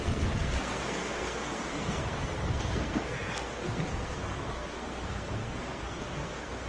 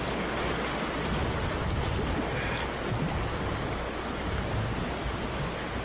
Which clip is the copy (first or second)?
first